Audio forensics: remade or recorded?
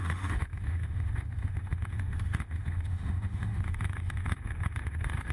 remade